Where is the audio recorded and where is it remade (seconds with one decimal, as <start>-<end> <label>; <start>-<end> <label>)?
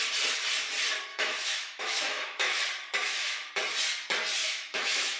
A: 0.0-1.1 recorded; 1.1-2.6 remade; 2.6-3.0 recorded; 3.0-3.5 remade; 3.5-4.4 recorded; 4.4-5.2 remade